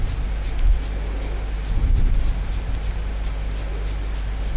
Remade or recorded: recorded